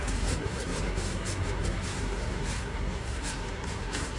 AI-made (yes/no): yes